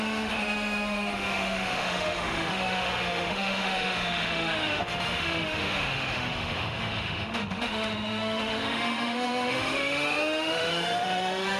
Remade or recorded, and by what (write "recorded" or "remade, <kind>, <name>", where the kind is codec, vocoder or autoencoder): remade, autoencoder, DAC-VAE